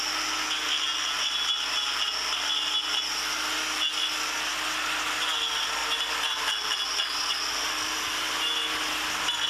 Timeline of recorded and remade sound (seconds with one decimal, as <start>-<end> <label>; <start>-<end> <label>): 0.0-9.5 recorded